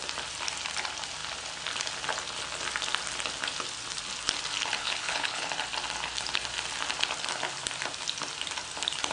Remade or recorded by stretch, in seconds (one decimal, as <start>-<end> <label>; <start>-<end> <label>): 0.0-4.8 recorded; 4.8-5.5 remade; 5.5-9.1 recorded

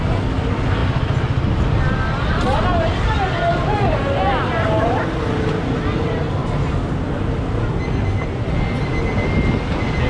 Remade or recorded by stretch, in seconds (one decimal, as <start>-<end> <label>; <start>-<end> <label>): 0.0-10.1 recorded

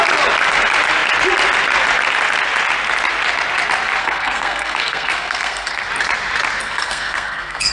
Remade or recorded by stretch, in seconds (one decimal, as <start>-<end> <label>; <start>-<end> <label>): 0.0-4.0 recorded; 4.0-5.9 remade; 5.9-6.6 recorded; 6.6-7.7 remade

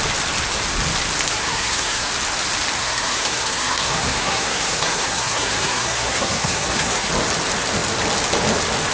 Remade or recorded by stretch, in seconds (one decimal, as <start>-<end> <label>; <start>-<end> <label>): 0.0-1.3 recorded; 1.3-2.1 remade; 2.1-2.8 recorded; 2.8-7.1 remade; 7.1-8.9 recorded

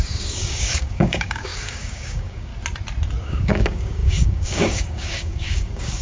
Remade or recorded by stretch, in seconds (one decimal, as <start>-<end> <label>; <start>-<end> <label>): 0.0-2.5 remade; 2.5-3.2 recorded; 3.2-6.0 remade

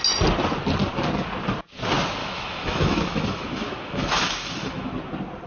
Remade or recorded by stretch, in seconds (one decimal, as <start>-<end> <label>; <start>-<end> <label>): 0.0-2.2 recorded; 2.2-4.9 remade; 4.9-5.5 recorded